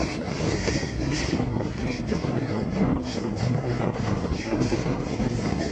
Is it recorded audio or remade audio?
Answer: remade